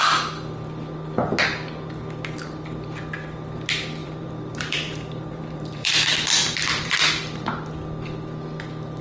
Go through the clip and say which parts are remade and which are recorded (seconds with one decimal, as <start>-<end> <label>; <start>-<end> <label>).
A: 0.0-4.0 recorded; 4.0-7.0 remade; 7.0-9.0 recorded